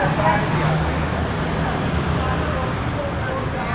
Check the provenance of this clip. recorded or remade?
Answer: recorded